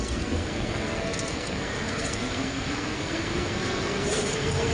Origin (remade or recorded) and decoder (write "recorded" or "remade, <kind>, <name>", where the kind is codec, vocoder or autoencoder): remade, codec, SNAC